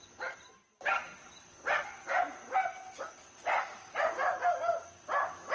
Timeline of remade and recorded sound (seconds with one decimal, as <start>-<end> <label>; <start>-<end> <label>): 0.0-5.5 recorded

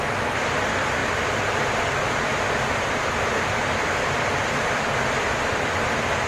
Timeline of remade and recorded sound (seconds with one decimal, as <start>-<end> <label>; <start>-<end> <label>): 0.0-6.3 recorded